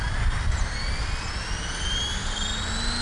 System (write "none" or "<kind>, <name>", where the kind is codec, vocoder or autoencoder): none